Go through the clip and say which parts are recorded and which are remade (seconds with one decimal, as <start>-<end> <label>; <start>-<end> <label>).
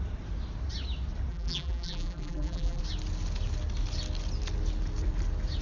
0.0-1.3 recorded; 1.3-2.8 remade; 2.8-5.6 recorded